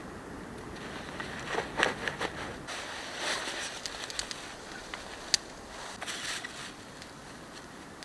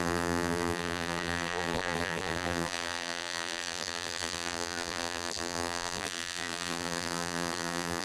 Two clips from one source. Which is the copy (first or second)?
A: second